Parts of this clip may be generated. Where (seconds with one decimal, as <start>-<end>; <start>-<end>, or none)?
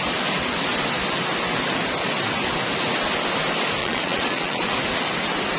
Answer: 3.8-4.7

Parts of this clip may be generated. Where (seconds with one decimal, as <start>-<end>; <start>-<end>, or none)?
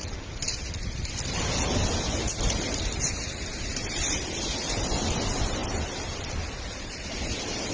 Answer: none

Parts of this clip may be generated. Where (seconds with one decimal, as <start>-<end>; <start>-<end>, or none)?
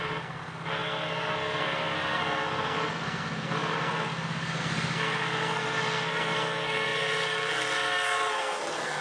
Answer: 0.0-9.0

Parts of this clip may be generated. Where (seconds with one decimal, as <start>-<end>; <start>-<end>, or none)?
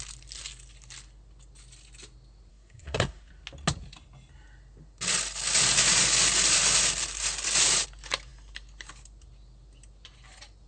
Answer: 2.5-3.3